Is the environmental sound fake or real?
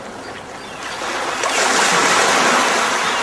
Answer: real